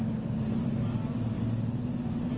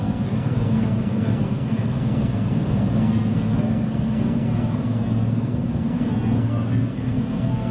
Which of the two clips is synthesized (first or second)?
second